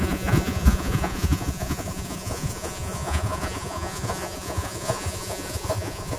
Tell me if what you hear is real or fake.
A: fake